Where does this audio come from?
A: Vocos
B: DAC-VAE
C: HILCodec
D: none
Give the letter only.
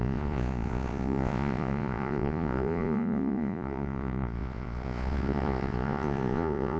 A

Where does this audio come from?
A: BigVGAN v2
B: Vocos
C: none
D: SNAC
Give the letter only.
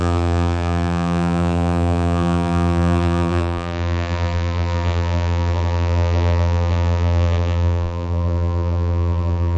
A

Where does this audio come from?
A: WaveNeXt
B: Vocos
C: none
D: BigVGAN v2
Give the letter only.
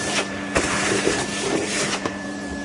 D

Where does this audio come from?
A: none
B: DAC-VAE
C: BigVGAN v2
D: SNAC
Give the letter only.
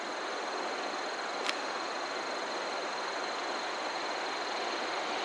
A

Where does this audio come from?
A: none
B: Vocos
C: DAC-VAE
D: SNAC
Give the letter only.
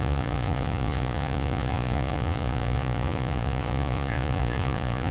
B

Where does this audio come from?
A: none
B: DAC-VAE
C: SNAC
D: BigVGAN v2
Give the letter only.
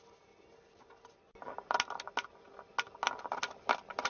A